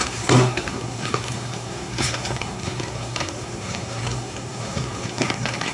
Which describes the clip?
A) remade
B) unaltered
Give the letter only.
A